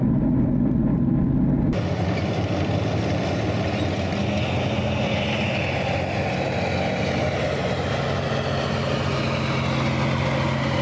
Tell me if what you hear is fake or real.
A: real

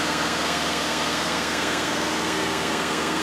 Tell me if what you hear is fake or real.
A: fake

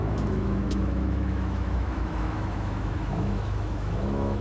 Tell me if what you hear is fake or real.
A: fake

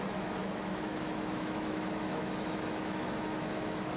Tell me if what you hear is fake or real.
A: fake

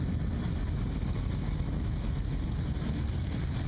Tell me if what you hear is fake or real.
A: real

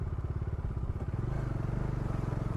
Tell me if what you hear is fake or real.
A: real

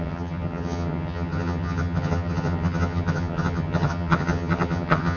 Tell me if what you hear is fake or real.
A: fake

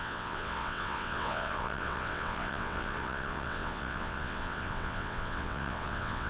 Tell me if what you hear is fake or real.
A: fake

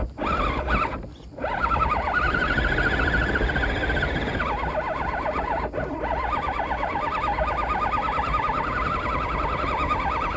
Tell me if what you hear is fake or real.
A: real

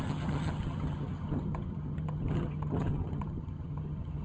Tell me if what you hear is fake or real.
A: fake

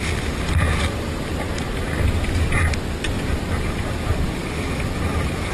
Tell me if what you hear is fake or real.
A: real